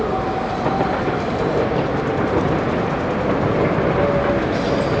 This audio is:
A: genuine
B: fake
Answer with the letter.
A